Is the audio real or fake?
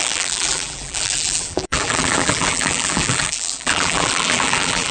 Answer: fake